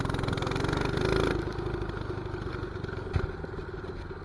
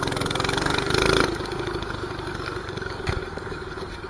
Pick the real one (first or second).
first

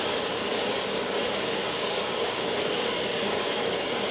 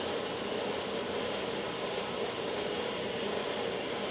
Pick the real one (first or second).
second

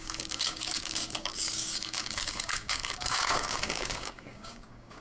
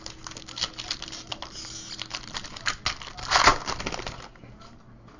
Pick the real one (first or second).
second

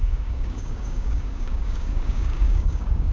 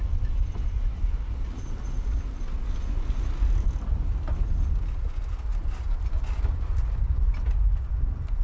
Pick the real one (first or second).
second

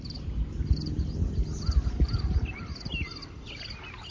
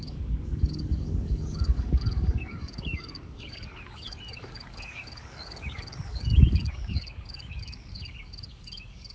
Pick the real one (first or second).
first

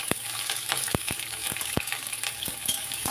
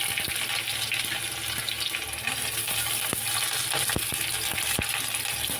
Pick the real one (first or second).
second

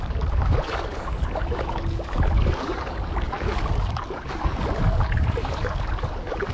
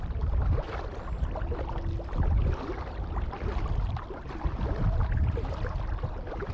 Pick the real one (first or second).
second